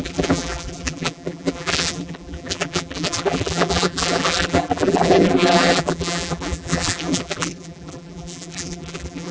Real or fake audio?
fake